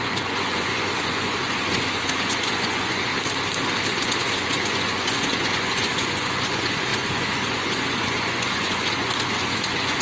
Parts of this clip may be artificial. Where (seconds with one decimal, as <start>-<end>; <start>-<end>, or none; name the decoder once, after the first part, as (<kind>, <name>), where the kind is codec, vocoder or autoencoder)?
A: 0.0-3.1 (vocoder, Vocos); 3.9-10.0